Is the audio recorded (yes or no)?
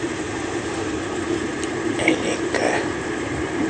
no